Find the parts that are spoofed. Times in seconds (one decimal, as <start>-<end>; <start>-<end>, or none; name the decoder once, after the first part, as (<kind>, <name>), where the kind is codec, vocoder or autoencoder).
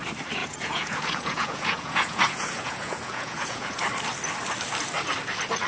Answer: 0.4-3.8 (vocoder, Vocos)